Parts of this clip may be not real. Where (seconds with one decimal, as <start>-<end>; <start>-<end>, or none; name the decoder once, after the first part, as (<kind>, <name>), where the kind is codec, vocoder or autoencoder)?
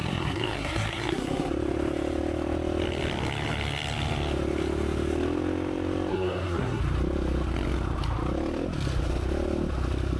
0.0-1.5 (codec, SNAC); 6.1-6.8